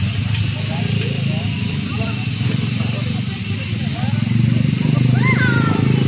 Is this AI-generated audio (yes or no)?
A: no